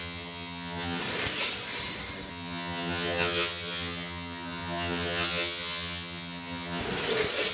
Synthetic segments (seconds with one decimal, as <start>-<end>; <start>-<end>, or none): 0.0-1.0; 2.3-6.8

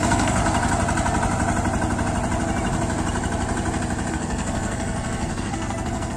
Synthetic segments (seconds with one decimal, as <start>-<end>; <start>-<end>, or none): 0.0-0.4; 4.1-6.2

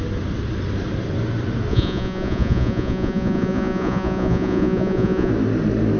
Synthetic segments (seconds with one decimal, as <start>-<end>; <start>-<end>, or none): 1.7-5.3

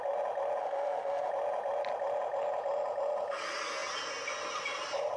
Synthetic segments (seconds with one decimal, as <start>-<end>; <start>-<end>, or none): 0.6-1.3

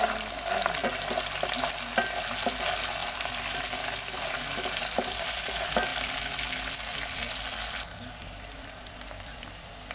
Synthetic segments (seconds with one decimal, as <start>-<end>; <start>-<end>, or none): 0.0-0.8; 2.4-5.9; 8.1-9.9